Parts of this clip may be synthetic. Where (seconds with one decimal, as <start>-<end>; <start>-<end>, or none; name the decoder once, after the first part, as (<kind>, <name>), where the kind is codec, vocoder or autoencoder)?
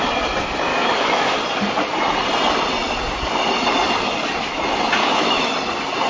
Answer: 0.7-1.4 (autoencoder, DAC-VAE); 5.0-5.5